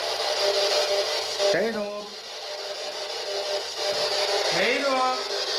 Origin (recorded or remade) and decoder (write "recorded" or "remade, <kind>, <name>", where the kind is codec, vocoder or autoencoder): recorded